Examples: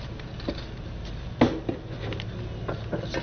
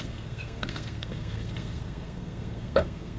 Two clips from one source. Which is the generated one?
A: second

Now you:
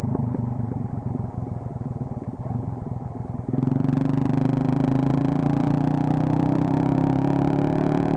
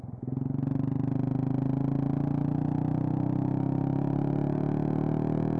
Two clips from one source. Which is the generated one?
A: first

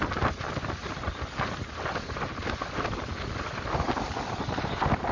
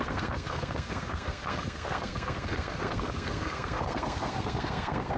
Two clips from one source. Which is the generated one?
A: second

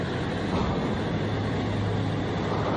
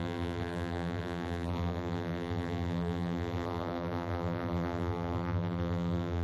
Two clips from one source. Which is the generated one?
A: second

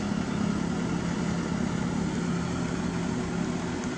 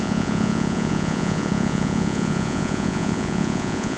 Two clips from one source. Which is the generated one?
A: second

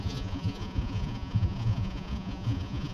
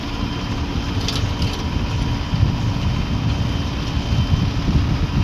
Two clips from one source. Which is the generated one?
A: first